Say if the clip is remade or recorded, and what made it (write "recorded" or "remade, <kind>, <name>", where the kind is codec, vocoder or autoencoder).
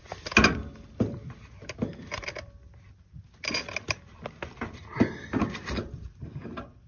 recorded